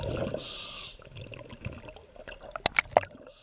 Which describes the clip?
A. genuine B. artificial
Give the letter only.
A